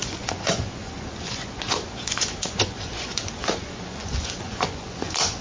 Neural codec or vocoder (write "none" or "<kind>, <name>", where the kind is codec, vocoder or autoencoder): vocoder, Vocos